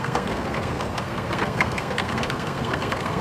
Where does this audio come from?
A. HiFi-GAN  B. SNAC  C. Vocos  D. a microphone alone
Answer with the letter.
B